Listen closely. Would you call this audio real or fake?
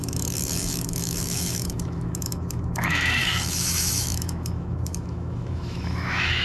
fake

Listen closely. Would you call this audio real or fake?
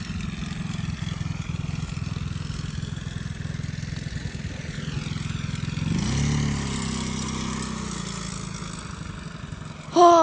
real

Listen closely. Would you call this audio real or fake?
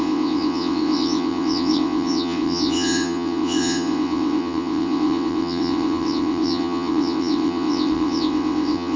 fake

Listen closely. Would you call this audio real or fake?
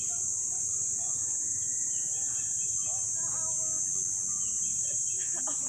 real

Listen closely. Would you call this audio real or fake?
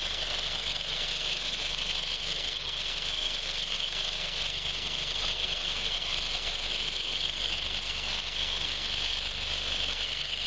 fake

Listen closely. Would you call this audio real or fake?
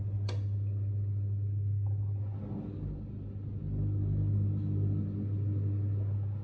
real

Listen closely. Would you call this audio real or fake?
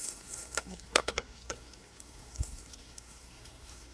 fake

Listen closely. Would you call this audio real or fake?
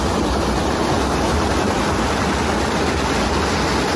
real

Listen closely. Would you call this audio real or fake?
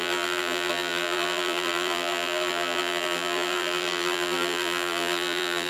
fake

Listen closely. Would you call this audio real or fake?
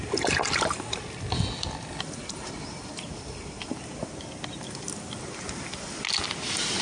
real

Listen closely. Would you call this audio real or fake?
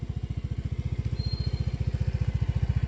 real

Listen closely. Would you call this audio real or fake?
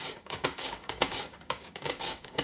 fake